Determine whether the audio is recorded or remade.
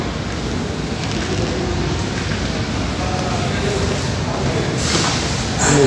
recorded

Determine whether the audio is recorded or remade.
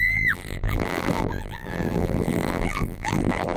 remade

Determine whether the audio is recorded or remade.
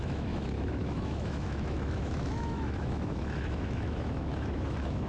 remade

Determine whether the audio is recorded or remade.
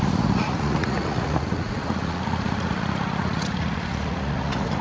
remade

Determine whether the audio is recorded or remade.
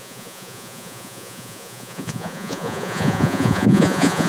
remade